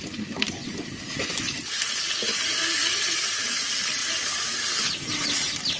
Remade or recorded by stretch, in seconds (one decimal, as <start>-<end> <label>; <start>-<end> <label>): 0.0-0.6 remade; 0.6-1.2 recorded; 1.2-2.8 remade; 2.8-3.4 recorded; 3.4-5.8 remade